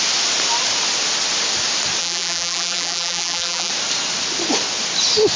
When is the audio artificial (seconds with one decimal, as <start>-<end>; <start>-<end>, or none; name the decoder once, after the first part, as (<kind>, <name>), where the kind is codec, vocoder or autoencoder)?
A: 2.0-3.7 (vocoder, BigVGAN v2)